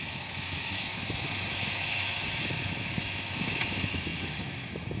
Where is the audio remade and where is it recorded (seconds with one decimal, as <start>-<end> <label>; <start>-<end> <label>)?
0.0-5.0 remade